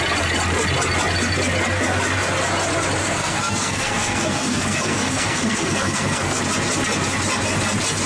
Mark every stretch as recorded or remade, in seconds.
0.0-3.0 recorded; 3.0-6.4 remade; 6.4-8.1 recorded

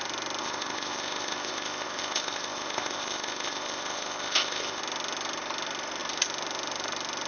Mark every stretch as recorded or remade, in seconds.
0.0-0.4 recorded; 0.4-4.8 remade; 4.8-7.3 recorded

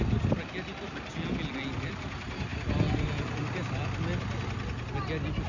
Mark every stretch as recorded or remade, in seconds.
0.0-5.5 recorded

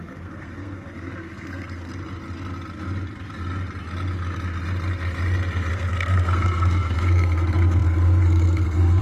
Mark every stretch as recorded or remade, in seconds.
0.0-1.9 remade; 1.9-5.7 recorded; 5.7-9.0 remade

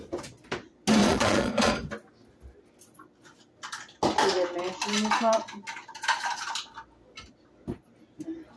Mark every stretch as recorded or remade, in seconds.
0.0-1.0 recorded; 1.0-1.7 remade; 1.7-8.6 recorded

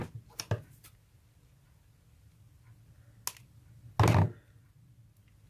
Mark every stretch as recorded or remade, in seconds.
0.0-5.5 recorded

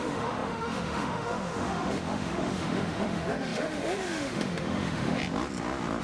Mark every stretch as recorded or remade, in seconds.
0.0-5.2 remade; 5.2-6.0 recorded